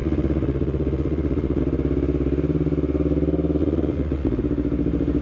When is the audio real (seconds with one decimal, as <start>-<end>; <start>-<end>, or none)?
1.6-3.6; 4.4-5.2